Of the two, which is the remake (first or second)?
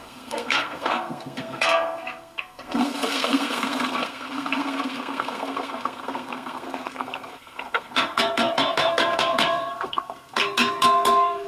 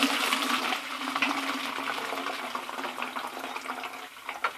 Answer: first